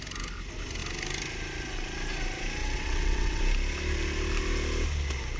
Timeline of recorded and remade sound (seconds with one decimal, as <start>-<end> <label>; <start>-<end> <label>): 0.0-2.6 recorded; 2.6-3.4 remade; 3.4-5.4 recorded